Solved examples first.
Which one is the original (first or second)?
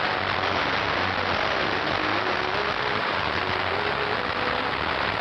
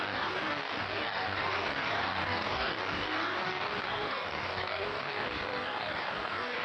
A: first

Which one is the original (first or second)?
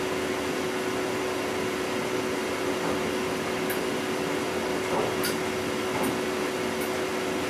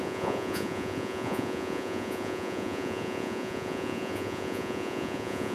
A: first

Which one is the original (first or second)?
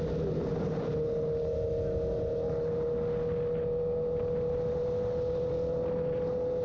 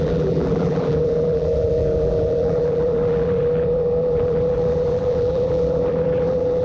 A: first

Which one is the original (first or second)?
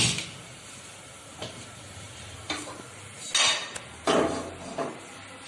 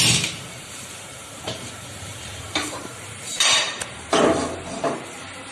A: first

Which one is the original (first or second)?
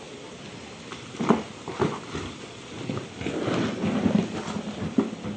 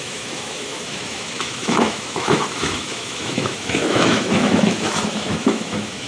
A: first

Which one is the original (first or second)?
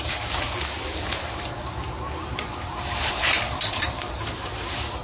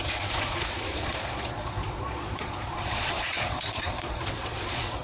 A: first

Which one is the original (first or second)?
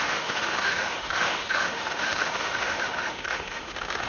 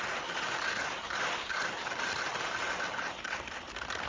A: second